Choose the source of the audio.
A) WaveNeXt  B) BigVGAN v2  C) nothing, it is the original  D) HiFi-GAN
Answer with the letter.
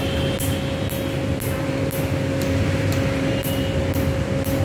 C